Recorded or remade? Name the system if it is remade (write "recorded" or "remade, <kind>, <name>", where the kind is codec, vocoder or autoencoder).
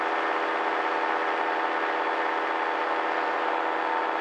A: recorded